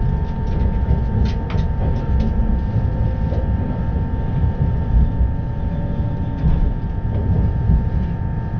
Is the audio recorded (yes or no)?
yes